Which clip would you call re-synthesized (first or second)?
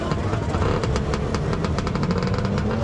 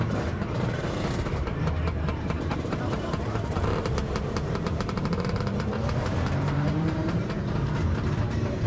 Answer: second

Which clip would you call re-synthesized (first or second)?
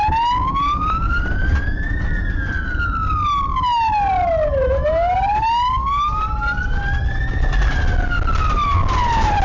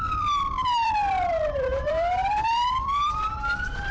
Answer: second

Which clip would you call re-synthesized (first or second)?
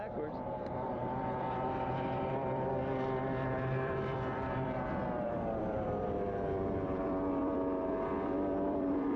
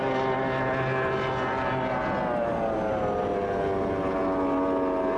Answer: first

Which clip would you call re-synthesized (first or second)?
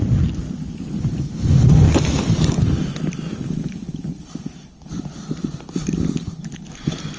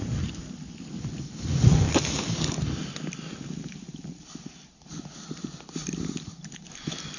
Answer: first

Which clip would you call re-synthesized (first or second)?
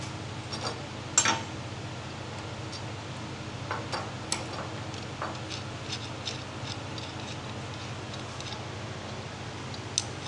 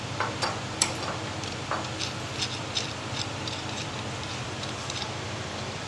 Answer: second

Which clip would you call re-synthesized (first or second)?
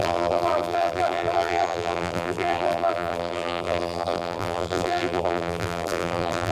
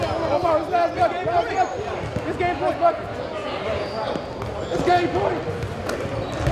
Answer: first